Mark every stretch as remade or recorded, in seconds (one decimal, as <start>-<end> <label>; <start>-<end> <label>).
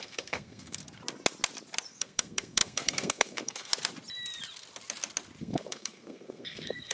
0.0-0.8 remade; 0.8-1.9 recorded; 1.9-3.7 remade; 3.7-5.4 recorded; 5.4-6.9 remade